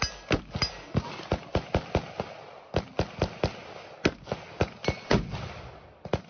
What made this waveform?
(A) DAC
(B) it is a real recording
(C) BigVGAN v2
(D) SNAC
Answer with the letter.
B